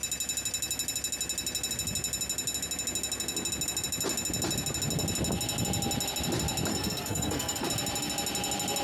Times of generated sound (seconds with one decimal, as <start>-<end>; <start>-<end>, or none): 6.7-7.7

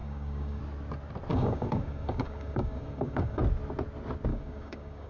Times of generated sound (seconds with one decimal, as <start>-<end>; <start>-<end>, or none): 0.0-0.6; 1.3-3.4; 4.3-5.1

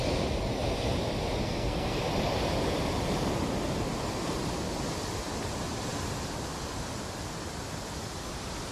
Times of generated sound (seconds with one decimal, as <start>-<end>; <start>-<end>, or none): 1.4-2.0

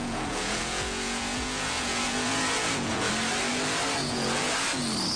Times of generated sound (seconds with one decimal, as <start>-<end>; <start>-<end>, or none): 0.0-3.1; 4.0-4.8